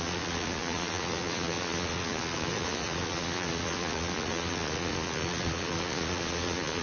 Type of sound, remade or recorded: remade